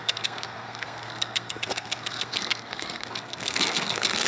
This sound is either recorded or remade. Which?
remade